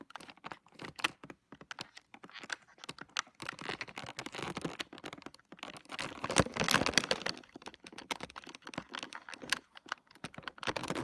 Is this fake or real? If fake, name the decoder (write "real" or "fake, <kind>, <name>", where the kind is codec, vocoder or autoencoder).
real